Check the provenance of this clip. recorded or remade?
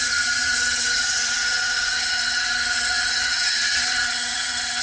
remade